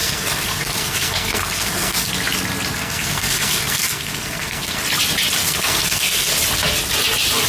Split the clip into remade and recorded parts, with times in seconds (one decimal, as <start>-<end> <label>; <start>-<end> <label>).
0.0-2.1 remade; 2.1-2.7 recorded; 2.7-4.8 remade; 4.8-5.4 recorded; 5.4-6.3 remade; 6.3-7.5 recorded